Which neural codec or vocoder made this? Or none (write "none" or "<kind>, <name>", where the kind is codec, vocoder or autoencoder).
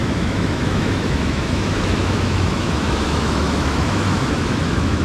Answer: autoencoder, DAC-VAE